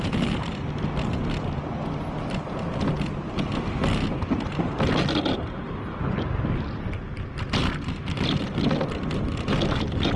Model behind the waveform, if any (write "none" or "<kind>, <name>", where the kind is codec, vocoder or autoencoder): none